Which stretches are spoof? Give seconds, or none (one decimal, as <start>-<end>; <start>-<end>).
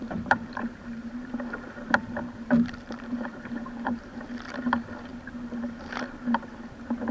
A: 0.0-4.3; 5.1-6.0